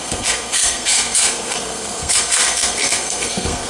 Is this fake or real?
fake